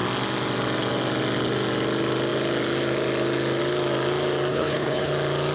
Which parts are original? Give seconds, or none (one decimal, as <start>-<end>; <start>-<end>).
0.0-4.5; 5.1-5.5